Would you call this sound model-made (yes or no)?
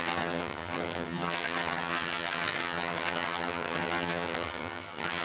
yes